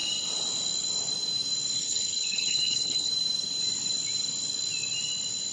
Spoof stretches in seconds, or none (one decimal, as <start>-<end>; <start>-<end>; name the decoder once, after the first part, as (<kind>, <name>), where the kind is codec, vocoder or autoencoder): 1.8-3.1 (codec, HILCodec)